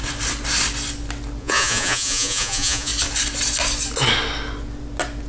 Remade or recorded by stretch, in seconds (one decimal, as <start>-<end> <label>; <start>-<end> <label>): 0.0-1.4 recorded; 1.4-2.9 remade; 2.9-5.3 recorded